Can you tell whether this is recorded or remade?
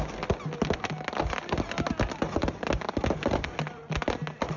recorded